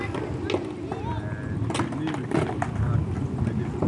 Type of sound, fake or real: real